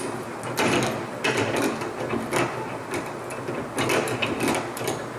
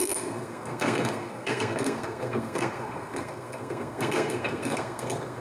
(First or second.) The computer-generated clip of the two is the second